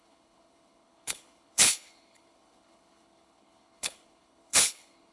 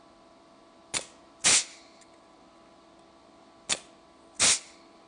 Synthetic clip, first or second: first